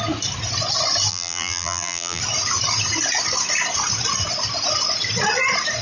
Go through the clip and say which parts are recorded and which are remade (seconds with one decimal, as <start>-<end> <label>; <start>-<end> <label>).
0.0-1.1 recorded; 1.1-2.2 remade; 2.2-5.8 recorded